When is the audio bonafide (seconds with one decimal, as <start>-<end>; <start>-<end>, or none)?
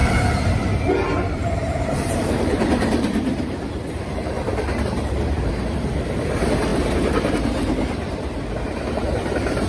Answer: none